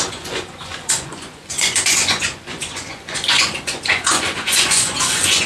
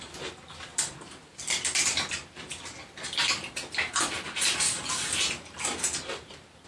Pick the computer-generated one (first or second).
first